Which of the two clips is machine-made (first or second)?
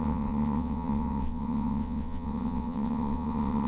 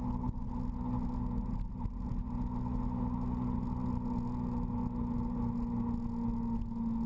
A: first